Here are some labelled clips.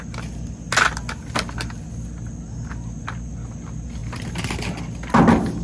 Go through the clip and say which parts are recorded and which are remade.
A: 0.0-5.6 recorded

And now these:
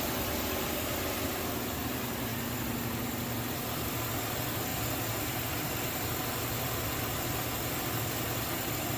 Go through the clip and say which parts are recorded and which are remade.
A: 0.0-9.0 recorded

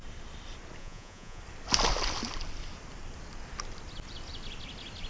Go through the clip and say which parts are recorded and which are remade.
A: 0.0-0.8 recorded; 0.8-1.4 remade; 1.4-5.1 recorded

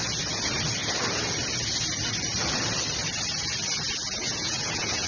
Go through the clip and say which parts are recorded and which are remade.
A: 0.0-4.2 recorded; 4.2-5.1 remade

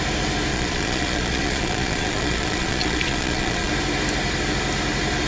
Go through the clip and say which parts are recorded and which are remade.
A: 0.0-0.5 recorded; 0.5-3.7 remade; 3.7-5.3 recorded

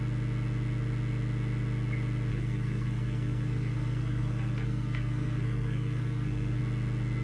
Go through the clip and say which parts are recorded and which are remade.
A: 0.0-2.3 recorded; 2.3-6.6 remade; 6.6-7.2 recorded

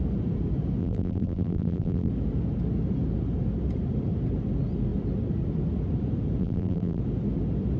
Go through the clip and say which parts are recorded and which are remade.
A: 0.0-0.8 recorded; 0.8-2.1 remade; 2.1-6.4 recorded; 6.4-7.0 remade; 7.0-7.8 recorded

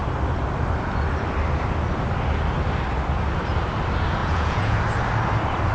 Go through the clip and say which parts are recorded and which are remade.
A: 0.0-4.2 recorded; 4.2-4.8 remade; 4.8-5.7 recorded